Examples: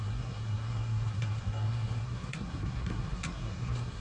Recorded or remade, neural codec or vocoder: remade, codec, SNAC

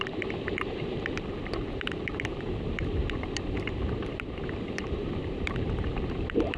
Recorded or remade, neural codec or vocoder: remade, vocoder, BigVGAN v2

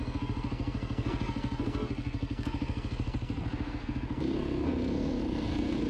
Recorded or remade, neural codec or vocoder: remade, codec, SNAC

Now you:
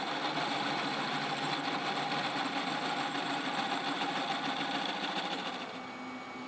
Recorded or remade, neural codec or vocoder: recorded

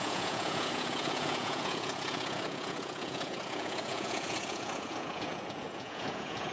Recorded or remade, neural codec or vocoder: remade, vocoder, Vocos